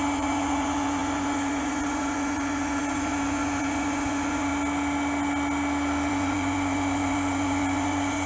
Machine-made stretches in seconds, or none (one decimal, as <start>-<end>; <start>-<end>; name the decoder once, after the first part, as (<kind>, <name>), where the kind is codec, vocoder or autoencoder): 0.0-4.5 (vocoder, Vocos); 6.1-8.3

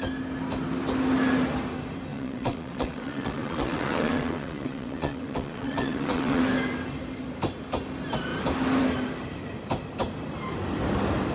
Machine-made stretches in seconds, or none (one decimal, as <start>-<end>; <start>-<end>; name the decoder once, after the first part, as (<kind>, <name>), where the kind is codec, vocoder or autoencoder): 2.1-6.4 (vocoder, WaveNeXt)

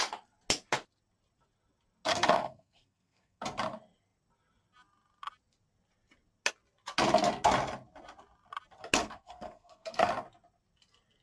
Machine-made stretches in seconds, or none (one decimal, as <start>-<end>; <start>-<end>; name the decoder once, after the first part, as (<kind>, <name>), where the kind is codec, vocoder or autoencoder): 2.1-3.4 (codec, SNAC); 9.0-10.1